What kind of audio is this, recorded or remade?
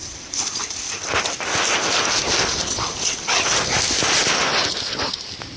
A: recorded